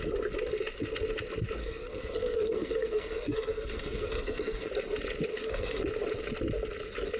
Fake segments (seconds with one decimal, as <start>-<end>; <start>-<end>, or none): 1.6-4.7; 5.3-5.8